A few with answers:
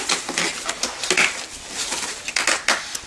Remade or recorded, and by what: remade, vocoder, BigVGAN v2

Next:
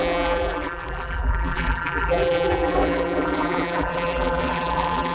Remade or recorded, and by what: remade, vocoder, BigVGAN v2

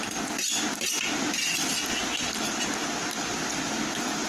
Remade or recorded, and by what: recorded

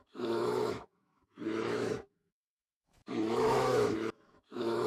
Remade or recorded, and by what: remade, autoencoder, DAC-VAE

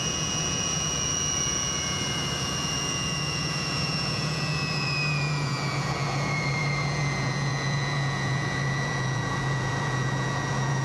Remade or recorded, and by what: remade, vocoder, Vocos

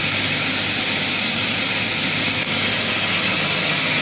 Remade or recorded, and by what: recorded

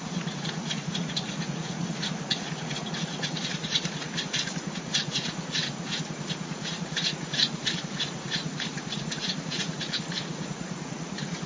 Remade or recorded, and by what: remade, vocoder, Vocos